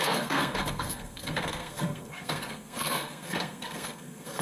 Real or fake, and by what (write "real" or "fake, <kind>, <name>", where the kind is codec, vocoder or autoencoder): fake, codec, SNAC